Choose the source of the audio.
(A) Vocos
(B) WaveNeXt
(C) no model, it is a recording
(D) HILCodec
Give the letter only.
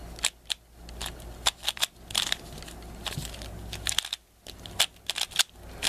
C